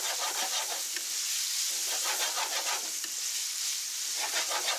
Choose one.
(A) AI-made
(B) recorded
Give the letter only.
B